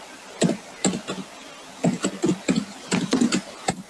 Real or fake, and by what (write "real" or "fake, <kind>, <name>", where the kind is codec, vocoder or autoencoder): real